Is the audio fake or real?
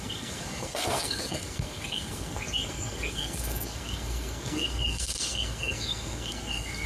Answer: fake